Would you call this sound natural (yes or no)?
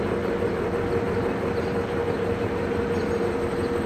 yes